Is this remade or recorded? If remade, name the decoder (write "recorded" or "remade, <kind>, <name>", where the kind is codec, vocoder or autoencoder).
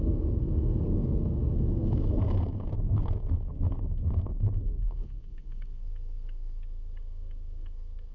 remade, codec, SNAC